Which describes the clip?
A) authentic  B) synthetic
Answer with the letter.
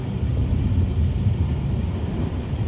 B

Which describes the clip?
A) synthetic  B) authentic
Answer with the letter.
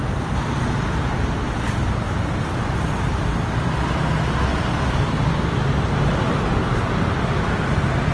B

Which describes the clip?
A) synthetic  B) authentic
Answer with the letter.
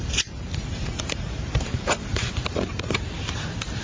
A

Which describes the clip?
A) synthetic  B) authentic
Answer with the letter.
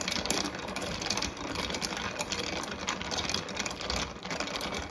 A